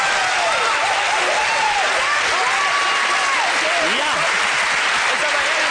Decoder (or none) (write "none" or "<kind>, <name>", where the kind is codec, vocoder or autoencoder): none